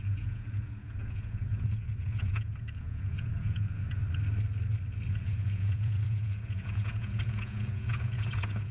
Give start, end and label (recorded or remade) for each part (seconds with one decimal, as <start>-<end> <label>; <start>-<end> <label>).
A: 0.0-4.0 remade; 4.0-5.1 recorded; 5.1-8.7 remade